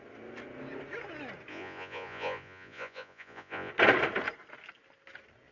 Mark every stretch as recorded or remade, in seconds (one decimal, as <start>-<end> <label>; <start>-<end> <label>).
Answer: 0.0-1.5 recorded; 1.5-3.7 remade; 3.7-5.5 recorded